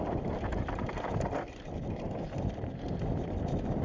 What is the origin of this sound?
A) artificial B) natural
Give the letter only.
B